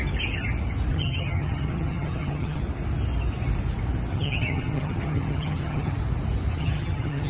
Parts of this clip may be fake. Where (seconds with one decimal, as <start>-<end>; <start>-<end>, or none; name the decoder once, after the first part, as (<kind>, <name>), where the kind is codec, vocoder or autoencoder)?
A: 0.9-2.6 (vocoder, HiFi-GAN); 4.1-5.9; 6.5-7.3